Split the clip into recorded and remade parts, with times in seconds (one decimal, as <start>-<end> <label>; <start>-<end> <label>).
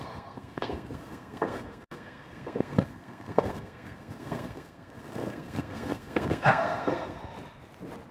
0.0-7.2 remade; 7.2-8.1 recorded